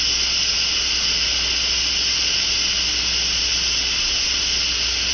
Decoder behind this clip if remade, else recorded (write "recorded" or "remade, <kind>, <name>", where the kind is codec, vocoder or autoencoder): recorded